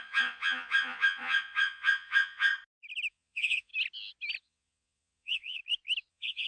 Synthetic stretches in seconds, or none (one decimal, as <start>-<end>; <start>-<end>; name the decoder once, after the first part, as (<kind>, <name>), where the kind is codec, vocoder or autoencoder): 0.0-2.5 (vocoder, Vocos); 3.1-3.7; 4.4-5.6; 6.1-6.5